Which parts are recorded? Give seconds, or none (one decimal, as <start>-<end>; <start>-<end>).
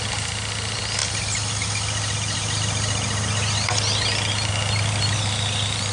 0.0-5.9